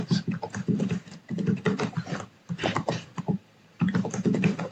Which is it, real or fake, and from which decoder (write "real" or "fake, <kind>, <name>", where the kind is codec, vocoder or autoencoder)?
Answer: fake, vocoder, BigVGAN v2